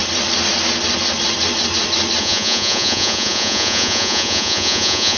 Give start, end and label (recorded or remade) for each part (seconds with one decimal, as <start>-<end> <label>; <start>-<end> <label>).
0.0-2.2 recorded; 2.2-5.2 remade